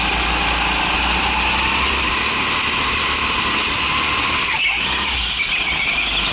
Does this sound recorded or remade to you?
recorded